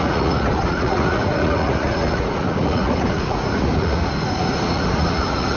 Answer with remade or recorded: remade